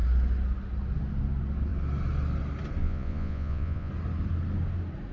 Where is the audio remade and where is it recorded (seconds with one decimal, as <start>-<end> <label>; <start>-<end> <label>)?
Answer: 0.0-2.8 recorded; 2.8-3.9 remade; 3.9-5.1 recorded